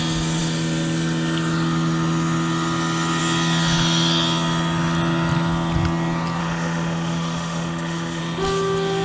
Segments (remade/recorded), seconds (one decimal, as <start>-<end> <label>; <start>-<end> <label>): 0.0-6.4 recorded; 6.4-8.2 remade; 8.2-9.0 recorded